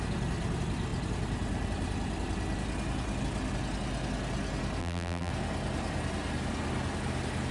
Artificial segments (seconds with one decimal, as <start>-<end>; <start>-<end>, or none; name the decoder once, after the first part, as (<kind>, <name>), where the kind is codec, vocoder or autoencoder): 4.8-5.3 (vocoder, BigVGAN v2)